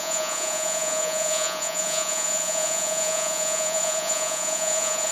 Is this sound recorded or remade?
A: remade